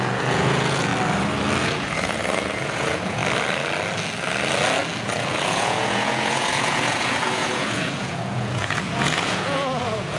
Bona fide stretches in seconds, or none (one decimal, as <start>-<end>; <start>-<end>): 0.9-1.6; 3.2-5.0